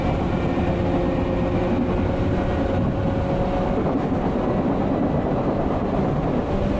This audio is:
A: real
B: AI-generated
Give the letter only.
A